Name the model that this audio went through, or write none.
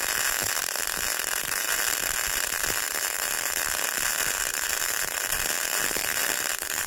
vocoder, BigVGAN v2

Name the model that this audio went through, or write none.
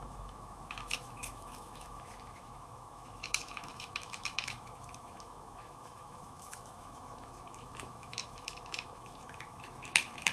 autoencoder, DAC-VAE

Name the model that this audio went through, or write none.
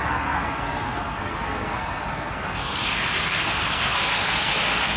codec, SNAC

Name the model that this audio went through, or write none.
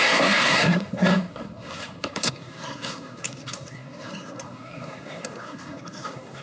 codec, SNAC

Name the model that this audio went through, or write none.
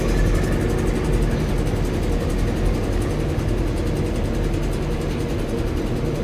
none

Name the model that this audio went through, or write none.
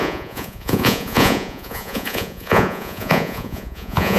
vocoder, Vocos